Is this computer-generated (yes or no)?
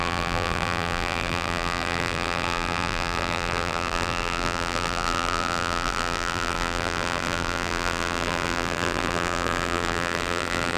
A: yes